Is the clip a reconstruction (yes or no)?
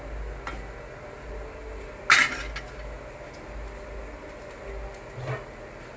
no